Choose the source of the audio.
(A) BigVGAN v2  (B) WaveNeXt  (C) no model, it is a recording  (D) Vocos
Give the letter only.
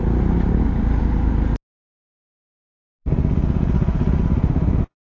C